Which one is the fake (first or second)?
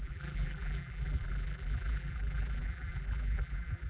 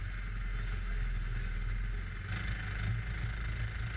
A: first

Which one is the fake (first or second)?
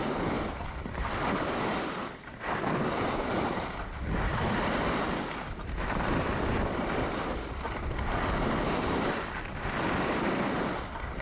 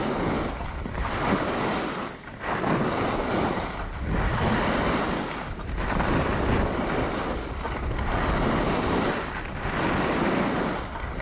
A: first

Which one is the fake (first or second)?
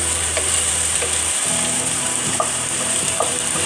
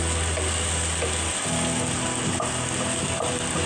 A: first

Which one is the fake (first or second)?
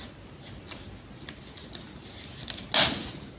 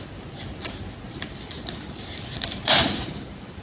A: second